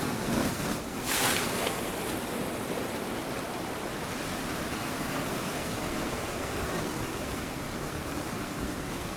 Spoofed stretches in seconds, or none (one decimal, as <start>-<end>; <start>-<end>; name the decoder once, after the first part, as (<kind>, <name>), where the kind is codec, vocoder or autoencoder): 0.0-1.9 (codec, SNAC); 4.7-9.2